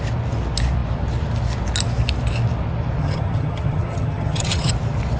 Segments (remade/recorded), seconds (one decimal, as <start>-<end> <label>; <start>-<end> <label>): 0.0-3.0 recorded; 3.0-4.7 remade; 4.7-5.2 recorded